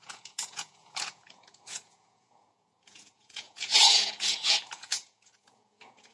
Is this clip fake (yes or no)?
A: yes